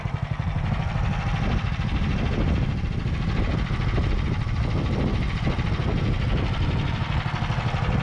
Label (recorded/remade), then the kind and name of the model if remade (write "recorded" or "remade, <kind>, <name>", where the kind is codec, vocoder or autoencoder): recorded